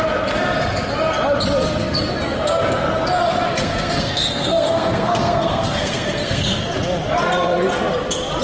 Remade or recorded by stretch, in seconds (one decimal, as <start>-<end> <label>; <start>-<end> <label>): 0.0-3.6 recorded; 3.6-6.6 remade; 6.6-8.4 recorded